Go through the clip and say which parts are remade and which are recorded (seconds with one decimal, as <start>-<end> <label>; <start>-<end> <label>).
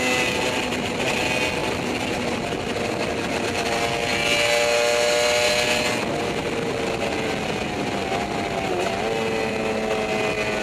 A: 0.0-10.6 recorded